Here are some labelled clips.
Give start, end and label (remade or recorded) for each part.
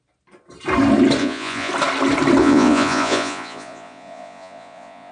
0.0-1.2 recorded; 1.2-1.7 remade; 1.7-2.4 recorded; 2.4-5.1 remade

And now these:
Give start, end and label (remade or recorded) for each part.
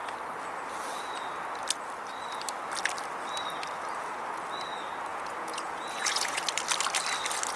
0.0-5.1 recorded; 5.1-6.4 remade; 6.4-7.6 recorded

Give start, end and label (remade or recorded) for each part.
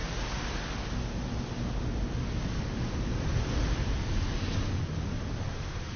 0.0-6.0 recorded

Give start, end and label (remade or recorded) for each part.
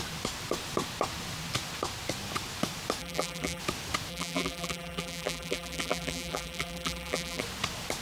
0.0-3.0 recorded; 3.0-3.6 remade; 3.6-4.1 recorded; 4.1-7.4 remade; 7.4-8.0 recorded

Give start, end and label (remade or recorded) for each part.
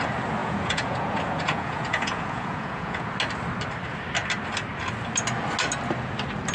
0.0-0.4 recorded; 0.4-3.1 remade; 3.1-6.5 recorded